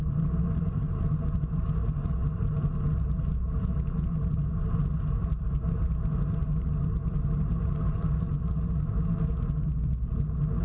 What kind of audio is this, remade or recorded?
recorded